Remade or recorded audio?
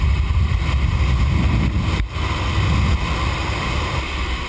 recorded